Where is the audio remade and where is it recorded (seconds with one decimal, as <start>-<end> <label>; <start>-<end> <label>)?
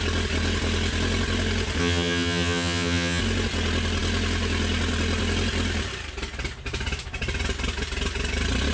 0.0-1.8 recorded; 1.8-3.2 remade; 3.2-8.7 recorded